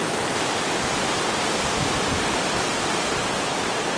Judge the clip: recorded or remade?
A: remade